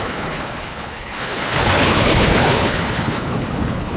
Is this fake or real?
fake